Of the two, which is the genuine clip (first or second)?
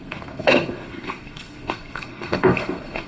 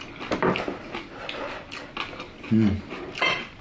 second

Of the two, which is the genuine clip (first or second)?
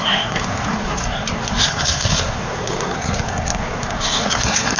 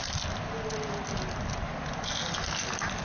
second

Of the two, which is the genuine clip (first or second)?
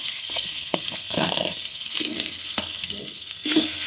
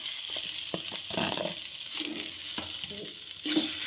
second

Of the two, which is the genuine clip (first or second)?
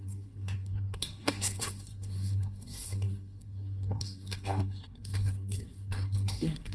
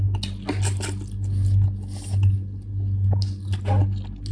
second